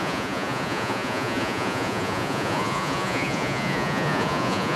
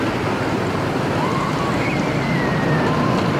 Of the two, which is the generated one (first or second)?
first